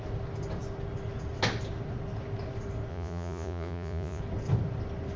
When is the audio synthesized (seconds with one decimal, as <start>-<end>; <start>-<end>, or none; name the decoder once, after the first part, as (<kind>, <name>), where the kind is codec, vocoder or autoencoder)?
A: 2.9-4.2 (vocoder, Vocos)